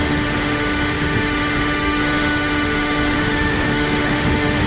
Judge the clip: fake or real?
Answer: fake